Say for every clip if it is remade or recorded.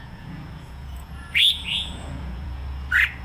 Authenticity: remade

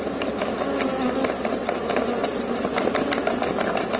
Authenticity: recorded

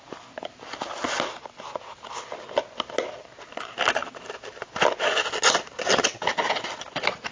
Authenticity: recorded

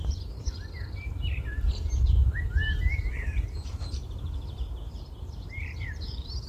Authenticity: remade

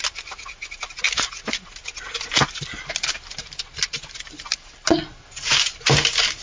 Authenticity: recorded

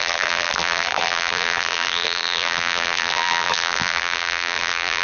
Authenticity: remade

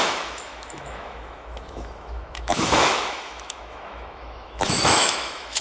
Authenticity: remade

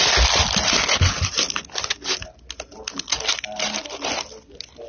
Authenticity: recorded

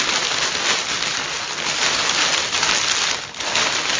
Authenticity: recorded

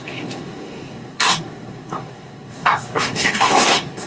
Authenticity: remade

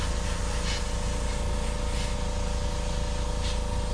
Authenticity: recorded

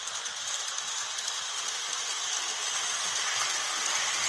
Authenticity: recorded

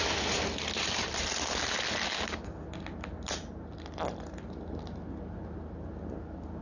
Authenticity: recorded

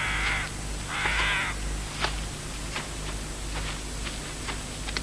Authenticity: recorded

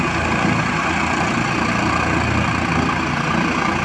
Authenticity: recorded